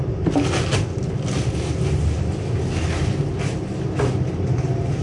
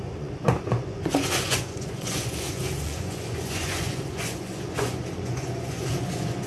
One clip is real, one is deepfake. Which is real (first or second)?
first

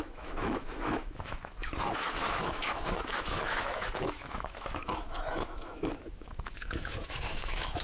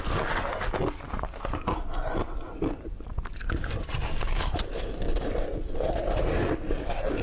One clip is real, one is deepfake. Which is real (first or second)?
second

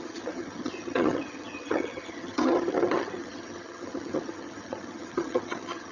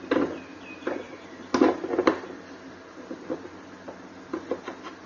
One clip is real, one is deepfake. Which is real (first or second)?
second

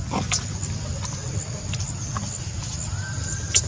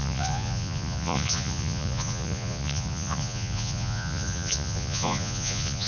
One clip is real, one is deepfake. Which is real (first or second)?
first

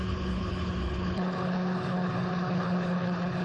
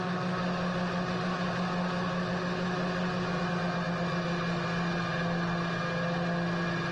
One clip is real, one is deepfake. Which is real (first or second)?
second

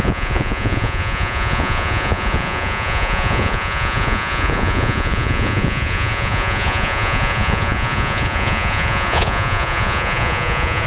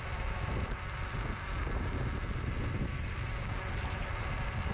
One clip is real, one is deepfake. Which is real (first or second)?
second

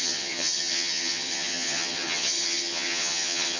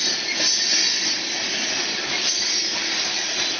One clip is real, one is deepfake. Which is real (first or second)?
second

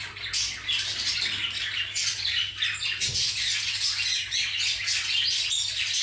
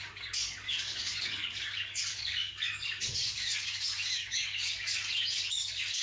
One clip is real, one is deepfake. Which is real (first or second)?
first